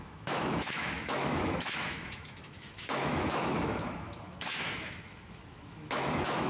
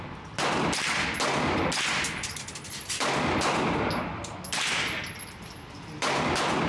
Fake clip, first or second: first